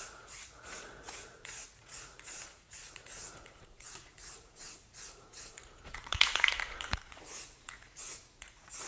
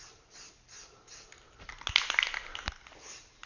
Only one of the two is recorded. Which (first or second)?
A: second